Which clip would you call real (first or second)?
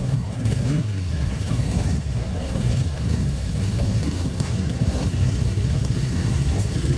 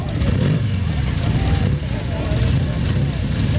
second